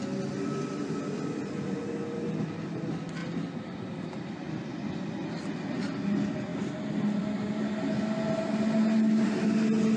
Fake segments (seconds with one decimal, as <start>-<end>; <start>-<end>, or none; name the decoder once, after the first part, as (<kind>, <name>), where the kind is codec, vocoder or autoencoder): none